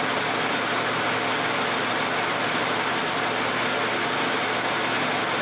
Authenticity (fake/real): real